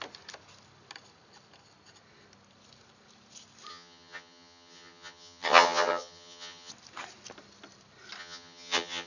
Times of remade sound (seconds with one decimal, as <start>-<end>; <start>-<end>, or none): 3.7-6.7; 8.2-9.1